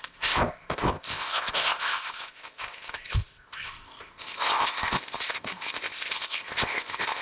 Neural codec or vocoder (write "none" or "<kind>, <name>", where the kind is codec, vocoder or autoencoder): codec, ZipCodec